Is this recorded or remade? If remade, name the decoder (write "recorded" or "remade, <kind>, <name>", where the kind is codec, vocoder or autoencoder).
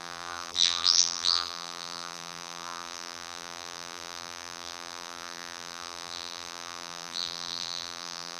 remade, vocoder, BigVGAN v2